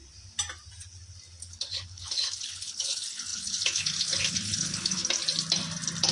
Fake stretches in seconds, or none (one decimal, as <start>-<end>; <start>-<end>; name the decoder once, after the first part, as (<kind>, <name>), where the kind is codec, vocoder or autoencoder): 1.4-5.0 (codec, HILCodec)

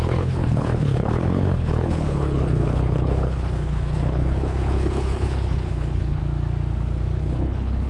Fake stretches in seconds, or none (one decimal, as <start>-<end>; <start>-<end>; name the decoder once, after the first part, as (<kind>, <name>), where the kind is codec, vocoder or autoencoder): 0.0-6.2 (codec, HILCodec); 7.2-7.9

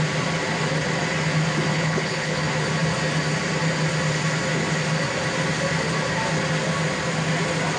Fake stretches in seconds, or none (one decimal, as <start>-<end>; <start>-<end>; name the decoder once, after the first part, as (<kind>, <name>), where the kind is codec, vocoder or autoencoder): 1.7-2.4 (codec, HILCodec)

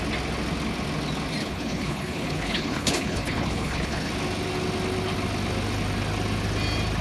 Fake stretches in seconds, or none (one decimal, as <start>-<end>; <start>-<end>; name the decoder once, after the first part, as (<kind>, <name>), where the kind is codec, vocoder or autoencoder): 1.4-4.1 (codec, HILCodec)

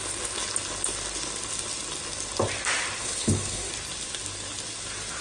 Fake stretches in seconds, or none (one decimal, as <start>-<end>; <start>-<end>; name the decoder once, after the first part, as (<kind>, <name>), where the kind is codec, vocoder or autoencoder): 3.0-3.7 (codec, HILCodec)

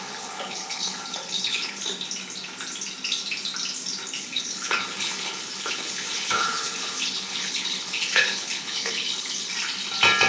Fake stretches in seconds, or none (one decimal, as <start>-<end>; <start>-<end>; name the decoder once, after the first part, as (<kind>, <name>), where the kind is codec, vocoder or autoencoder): 0.0-1.8 (codec, HILCodec); 4.2-9.5

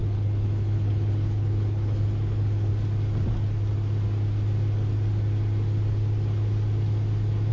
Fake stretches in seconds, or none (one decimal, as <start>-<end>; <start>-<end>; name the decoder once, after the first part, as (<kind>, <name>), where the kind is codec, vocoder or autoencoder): 0.0-2.7 (codec, HILCodec)